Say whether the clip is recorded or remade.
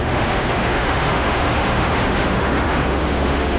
remade